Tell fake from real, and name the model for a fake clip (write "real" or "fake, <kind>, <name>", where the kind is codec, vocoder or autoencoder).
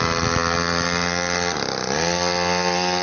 real